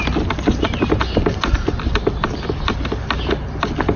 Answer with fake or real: real